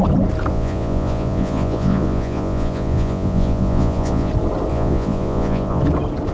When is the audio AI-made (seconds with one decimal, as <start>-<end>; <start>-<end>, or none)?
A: 0.5-4.3; 4.7-5.8